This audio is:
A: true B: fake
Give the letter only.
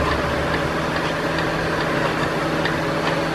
A